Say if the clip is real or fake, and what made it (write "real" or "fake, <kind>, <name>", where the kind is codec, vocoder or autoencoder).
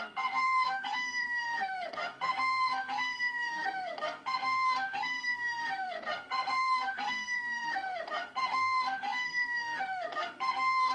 fake, codec, SNAC